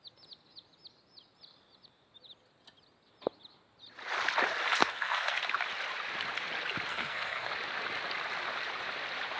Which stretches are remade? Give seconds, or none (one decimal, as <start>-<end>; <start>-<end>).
4.8-5.4; 6.9-7.5